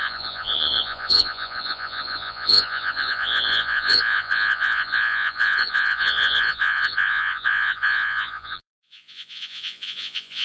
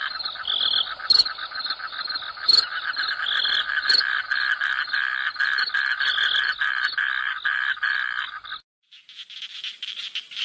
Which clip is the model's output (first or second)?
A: first